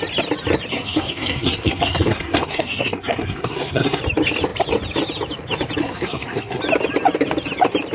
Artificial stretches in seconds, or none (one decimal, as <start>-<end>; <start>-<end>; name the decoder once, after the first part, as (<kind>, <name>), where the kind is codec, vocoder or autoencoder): 0.7-4.0 (codec, SNAC); 5.8-6.6